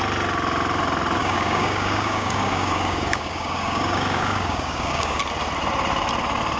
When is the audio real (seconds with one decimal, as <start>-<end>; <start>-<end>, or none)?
0.0-1.2; 5.2-6.6